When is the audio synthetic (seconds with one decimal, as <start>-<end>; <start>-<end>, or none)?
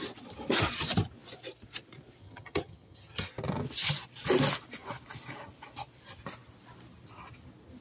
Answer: 2.2-3.3